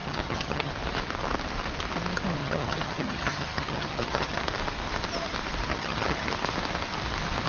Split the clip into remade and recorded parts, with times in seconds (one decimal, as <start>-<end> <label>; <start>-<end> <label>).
0.0-0.7 remade; 0.7-2.4 recorded; 2.4-4.4 remade; 4.4-5.7 recorded; 5.7-6.3 remade; 6.3-7.5 recorded